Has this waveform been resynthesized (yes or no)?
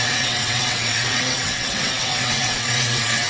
yes